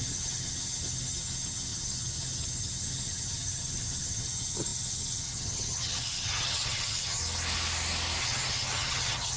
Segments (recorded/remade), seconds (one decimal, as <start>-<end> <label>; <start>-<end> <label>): 0.0-7.2 remade; 7.2-8.2 recorded; 8.2-9.4 remade